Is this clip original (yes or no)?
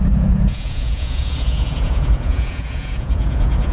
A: no